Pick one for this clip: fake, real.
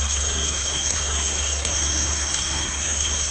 fake